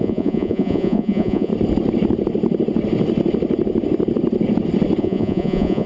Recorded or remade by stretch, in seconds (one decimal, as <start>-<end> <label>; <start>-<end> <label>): 0.0-1.5 remade; 1.5-5.0 recorded; 5.0-5.9 remade